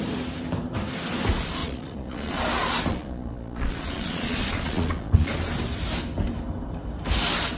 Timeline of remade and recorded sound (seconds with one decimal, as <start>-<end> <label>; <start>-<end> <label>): 0.0-1.6 recorded; 1.6-2.4 remade; 2.4-2.9 recorded; 2.9-5.3 remade; 5.3-7.6 recorded